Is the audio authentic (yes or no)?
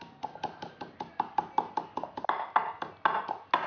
yes